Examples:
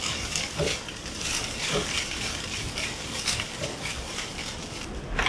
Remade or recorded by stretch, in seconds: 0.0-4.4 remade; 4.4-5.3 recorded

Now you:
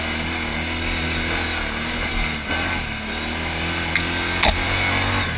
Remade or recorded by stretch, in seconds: 0.0-5.4 recorded

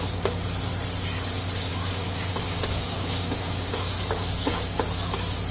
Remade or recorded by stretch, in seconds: 0.0-1.7 recorded; 1.7-4.8 remade; 4.8-5.5 recorded

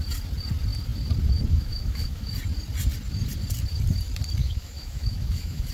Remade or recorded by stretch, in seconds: 0.0-1.5 recorded; 1.5-2.3 remade; 2.3-4.4 recorded; 4.4-5.7 remade

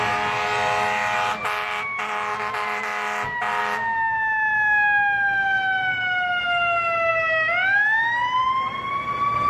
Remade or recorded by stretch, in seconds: 0.0-9.5 recorded

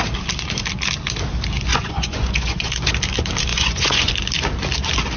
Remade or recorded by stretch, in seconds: 0.0-1.7 recorded; 1.7-2.9 remade; 2.9-3.5 recorded; 3.5-4.1 remade; 4.1-5.2 recorded

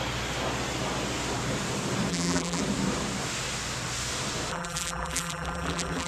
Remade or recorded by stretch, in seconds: 0.0-2.1 recorded; 2.1-2.6 remade; 2.6-4.5 recorded; 4.5-6.1 remade